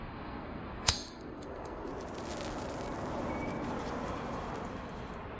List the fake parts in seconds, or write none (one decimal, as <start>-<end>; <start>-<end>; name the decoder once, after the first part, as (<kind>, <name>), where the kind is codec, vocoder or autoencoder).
0.0-1.9 (codec, SNAC)